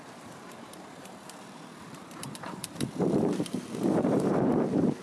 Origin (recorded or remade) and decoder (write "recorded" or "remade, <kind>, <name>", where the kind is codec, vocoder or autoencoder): remade, vocoder, BigVGAN v2